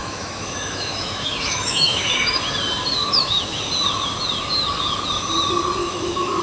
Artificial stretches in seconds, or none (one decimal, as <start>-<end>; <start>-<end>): 0.0-2.4; 3.0-3.6; 5.8-6.4